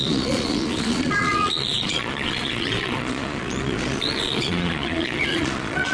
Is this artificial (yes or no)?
yes